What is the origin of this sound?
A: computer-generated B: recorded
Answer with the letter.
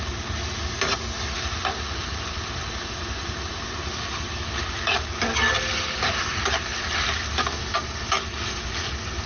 B